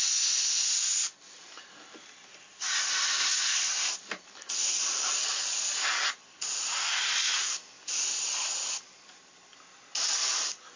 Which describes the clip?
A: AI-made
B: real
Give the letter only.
B